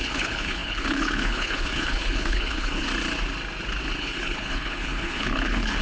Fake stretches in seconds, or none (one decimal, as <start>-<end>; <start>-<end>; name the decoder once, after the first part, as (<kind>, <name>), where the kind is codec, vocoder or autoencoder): 0.0-2.9 (codec, HILCodec); 4.0-5.8